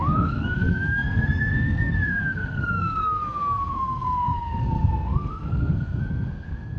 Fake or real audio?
fake